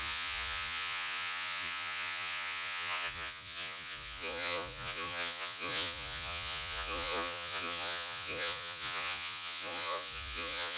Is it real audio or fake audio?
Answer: fake